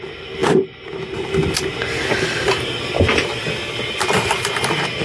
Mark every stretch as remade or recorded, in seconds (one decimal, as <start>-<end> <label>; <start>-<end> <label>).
0.0-5.0 recorded